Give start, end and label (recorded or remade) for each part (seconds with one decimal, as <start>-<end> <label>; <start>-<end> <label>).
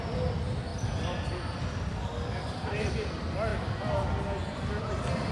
0.0-0.7 recorded; 0.7-2.9 remade; 2.9-3.5 recorded; 3.5-4.8 remade; 4.8-5.3 recorded